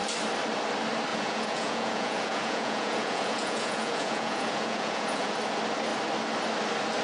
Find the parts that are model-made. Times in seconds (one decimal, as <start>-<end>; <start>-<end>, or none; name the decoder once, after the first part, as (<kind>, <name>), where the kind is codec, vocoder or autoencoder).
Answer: 1.1-5.3 (vocoder, Vocos)